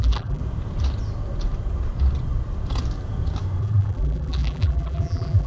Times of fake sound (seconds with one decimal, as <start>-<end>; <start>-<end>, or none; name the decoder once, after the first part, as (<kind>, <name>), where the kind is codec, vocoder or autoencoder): 0.0-0.4 (vocoder, BigVGAN v2); 3.6-5.5